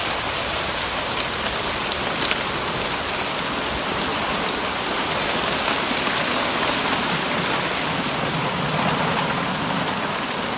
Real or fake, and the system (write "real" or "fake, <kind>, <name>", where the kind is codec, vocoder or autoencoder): real